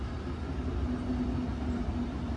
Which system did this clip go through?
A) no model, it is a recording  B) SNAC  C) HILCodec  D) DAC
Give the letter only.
A